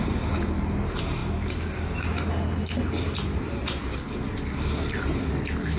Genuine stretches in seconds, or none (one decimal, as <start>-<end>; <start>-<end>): 0.0-5.8